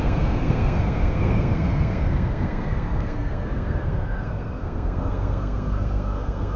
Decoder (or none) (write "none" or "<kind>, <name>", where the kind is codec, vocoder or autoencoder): codec, SNAC